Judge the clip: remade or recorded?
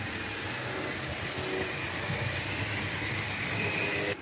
recorded